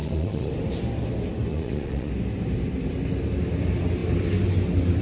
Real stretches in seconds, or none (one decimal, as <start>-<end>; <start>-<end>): 0.5-1.5; 2.1-5.0